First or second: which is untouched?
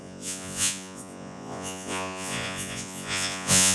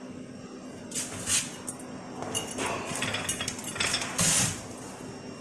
second